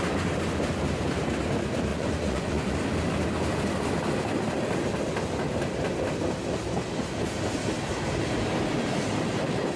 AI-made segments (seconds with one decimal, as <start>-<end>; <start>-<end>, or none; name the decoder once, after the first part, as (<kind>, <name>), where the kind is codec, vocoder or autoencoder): 1.9-2.7 (vocoder, Vocos)